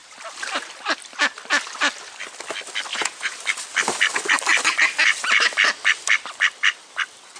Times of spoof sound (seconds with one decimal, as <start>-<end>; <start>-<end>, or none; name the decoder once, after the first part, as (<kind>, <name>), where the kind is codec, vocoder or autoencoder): 2.9-3.4 (vocoder, Vocos)